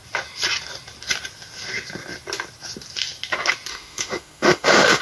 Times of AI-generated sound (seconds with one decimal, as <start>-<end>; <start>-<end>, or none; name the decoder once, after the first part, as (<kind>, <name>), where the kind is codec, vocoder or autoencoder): 3.7-5.0 (autoencoder, DAC-VAE)